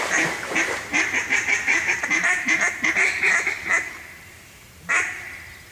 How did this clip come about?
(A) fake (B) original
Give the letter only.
A